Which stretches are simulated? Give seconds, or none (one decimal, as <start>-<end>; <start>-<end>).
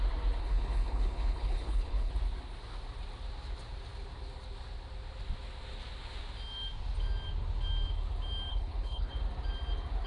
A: 0.4-2.1; 8.5-9.1